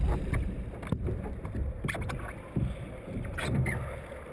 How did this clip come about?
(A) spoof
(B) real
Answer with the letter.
B